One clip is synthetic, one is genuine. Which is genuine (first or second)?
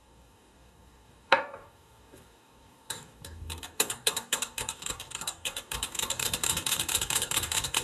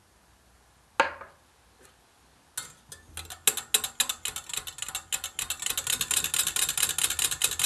second